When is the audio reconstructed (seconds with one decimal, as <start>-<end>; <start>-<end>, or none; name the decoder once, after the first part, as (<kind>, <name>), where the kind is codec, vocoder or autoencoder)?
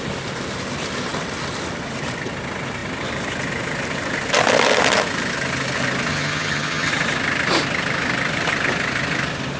6.1-6.9 (vocoder, HiFi-GAN)